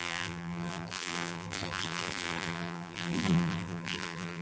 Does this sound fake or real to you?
fake